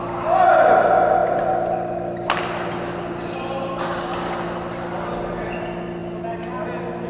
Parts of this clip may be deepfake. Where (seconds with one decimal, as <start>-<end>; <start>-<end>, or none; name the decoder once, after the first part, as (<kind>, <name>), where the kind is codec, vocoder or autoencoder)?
none